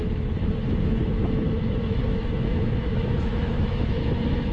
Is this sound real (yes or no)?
no